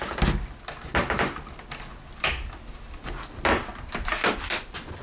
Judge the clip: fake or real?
real